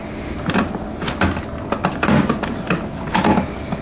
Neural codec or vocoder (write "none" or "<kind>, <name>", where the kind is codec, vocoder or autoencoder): none